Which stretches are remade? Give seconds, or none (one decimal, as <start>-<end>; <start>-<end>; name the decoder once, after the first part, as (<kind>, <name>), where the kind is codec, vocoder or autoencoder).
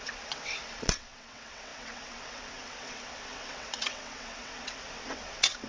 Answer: 0.0-5.7 (vocoder, WaveNeXt)